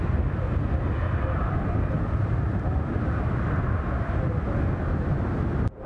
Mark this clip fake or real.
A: real